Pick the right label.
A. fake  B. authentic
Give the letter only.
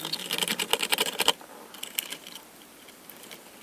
A